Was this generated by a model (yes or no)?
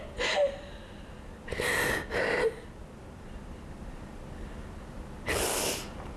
no